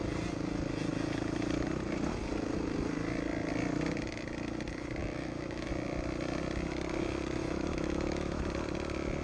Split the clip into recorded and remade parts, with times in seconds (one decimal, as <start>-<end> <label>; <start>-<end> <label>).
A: 0.0-5.0 recorded; 5.0-5.7 remade; 5.7-7.4 recorded; 7.4-8.4 remade; 8.4-9.2 recorded